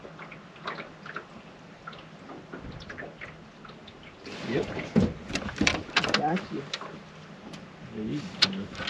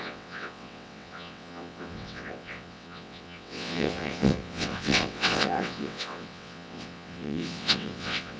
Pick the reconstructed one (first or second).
second